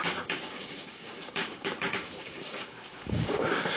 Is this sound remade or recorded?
remade